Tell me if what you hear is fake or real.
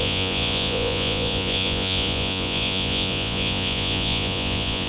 fake